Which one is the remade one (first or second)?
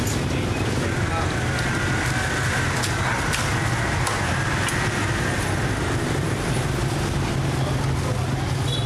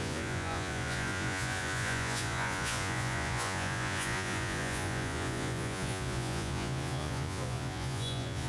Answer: second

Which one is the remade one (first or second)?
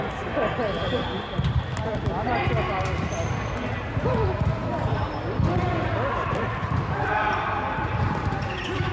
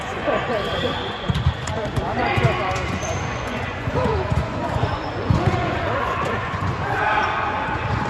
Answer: second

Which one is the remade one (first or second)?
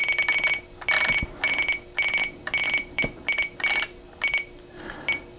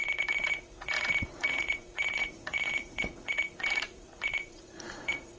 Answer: second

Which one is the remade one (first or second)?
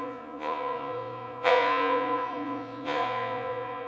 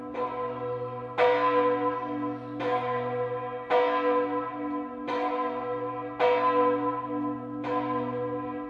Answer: first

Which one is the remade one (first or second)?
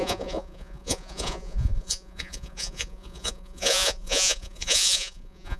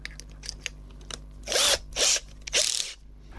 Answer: first